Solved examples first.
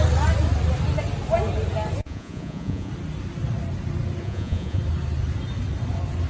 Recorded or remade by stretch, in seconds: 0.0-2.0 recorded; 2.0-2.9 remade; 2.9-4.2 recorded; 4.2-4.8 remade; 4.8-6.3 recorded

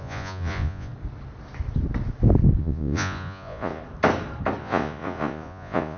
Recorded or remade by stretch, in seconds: 0.0-0.9 remade; 0.9-2.6 recorded; 2.6-3.8 remade; 3.8-4.6 recorded; 4.6-6.0 remade

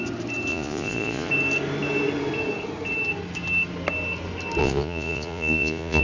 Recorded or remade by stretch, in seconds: 0.0-0.5 recorded; 0.5-1.3 remade; 1.3-4.6 recorded; 4.6-6.0 remade

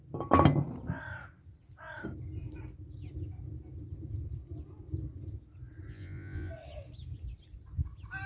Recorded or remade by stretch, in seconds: 0.0-5.9 recorded; 5.9-6.5 remade; 6.5-8.3 recorded